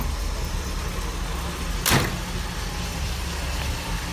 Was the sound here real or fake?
real